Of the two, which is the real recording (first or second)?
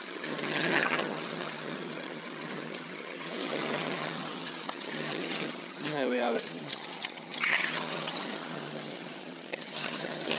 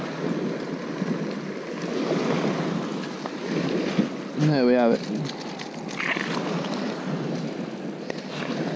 second